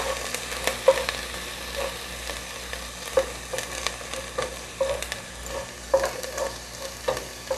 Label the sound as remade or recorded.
recorded